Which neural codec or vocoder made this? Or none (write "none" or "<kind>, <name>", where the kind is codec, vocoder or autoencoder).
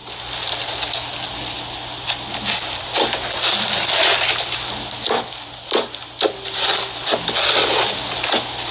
none